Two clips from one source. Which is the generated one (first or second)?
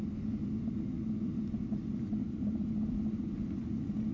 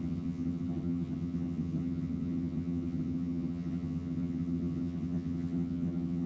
second